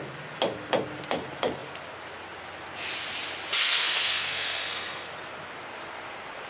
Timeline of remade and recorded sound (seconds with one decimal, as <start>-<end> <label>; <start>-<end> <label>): 0.0-3.6 recorded; 3.6-5.1 remade; 5.1-6.5 recorded